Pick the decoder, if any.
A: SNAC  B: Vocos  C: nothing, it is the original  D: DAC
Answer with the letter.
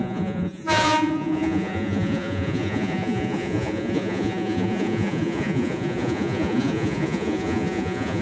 B